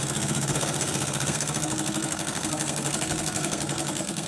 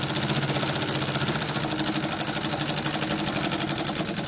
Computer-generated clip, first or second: first